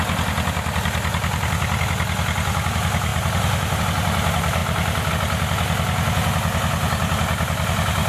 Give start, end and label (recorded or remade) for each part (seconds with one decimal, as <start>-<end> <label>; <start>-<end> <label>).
0.0-8.1 recorded